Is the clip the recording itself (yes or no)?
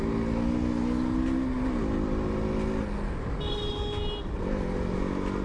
yes